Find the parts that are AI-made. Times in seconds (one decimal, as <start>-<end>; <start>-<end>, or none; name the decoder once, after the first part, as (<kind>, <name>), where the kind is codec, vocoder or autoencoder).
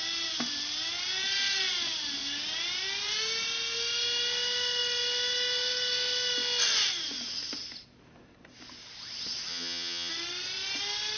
9.5-10.1 (vocoder, HiFi-GAN)